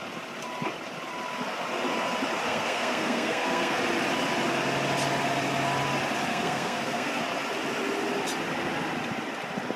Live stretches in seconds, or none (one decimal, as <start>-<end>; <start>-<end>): 0.0-2.5; 3.8-6.3; 7.2-9.8